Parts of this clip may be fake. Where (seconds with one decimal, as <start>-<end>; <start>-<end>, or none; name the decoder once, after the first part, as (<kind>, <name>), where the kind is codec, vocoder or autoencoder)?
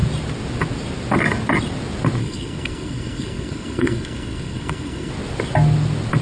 2.2-5.1 (codec, SNAC)